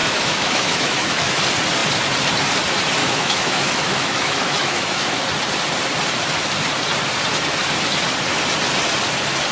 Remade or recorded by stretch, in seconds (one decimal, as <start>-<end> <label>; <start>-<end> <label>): 0.0-1.4 remade; 1.4-3.0 recorded; 3.0-5.2 remade; 5.2-9.5 recorded